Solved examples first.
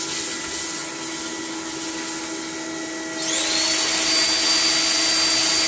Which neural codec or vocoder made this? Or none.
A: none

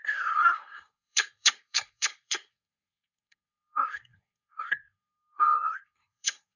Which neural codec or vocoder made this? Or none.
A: codec, SNAC